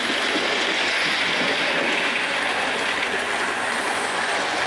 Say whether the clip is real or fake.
fake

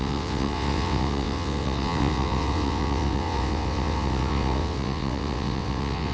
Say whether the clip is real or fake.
fake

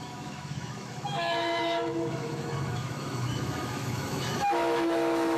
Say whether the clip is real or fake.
fake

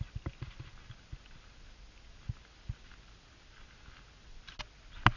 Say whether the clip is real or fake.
real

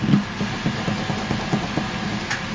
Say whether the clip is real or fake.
real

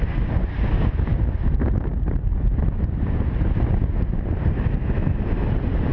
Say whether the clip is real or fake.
real